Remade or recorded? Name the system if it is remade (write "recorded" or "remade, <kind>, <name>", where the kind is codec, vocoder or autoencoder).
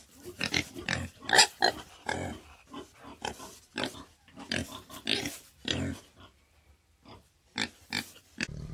remade, vocoder, BigVGAN v2